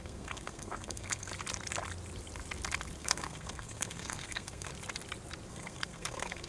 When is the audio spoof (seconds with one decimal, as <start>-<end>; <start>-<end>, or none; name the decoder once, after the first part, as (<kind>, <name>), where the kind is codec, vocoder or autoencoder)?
0.0-1.3 (codec, SNAC); 3.0-4.7; 5.5-6.5